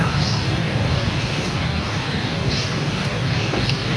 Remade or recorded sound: remade